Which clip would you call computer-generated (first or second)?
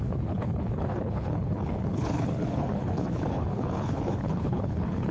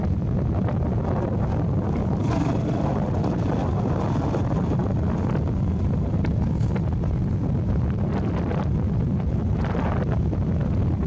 first